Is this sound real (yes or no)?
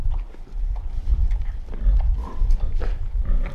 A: yes